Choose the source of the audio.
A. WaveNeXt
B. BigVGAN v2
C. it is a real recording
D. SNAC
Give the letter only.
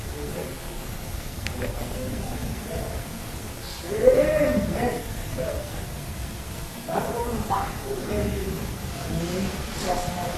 D